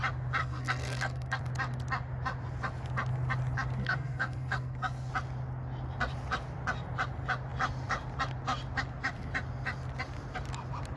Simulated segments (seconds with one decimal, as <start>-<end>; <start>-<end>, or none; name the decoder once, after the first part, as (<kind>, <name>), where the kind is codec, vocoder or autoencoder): 0.4-1.4 (codec, SNAC); 3.8-5.1